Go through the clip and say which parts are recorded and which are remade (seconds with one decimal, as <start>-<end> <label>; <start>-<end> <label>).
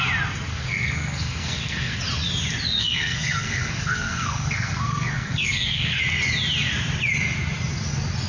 0.0-0.5 recorded; 0.5-2.0 remade; 2.0-2.8 recorded; 2.8-6.0 remade; 6.0-8.3 recorded